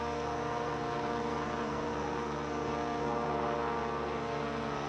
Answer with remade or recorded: remade